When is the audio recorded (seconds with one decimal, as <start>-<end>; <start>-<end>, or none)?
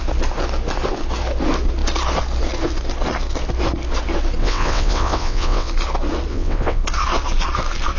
0.0-4.4; 5.7-6.3; 6.8-8.0